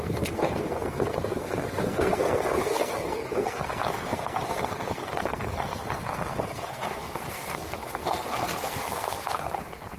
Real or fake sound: fake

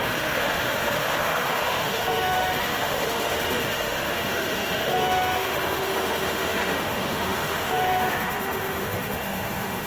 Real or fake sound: fake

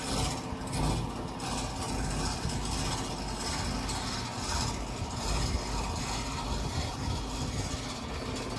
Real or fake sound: real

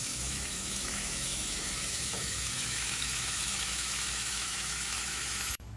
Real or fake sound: fake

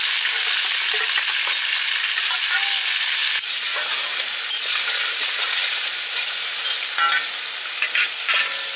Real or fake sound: real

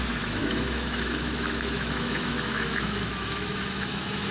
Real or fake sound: fake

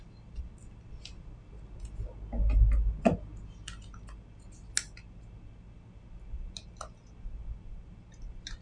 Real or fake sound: real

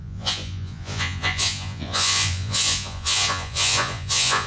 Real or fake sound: fake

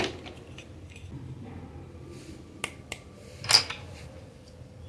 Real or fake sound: real